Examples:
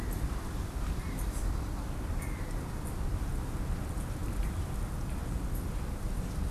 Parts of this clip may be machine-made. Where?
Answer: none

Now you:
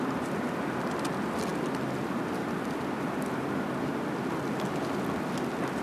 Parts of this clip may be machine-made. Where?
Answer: none

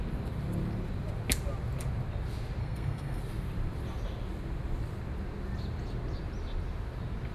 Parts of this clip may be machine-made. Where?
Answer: 2.6-3.2 (codec, SNAC)

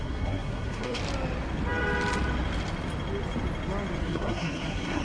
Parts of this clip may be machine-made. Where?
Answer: 0.0-1.0 (codec, SNAC); 4.0-5.0

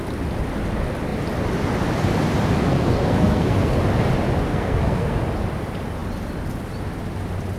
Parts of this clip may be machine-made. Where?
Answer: 2.6-3.8 (codec, SNAC); 4.4-5.2